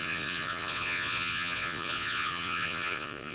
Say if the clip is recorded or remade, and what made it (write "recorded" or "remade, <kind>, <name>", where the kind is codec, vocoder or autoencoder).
remade, vocoder, Vocos